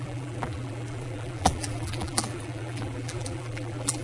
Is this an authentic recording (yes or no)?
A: no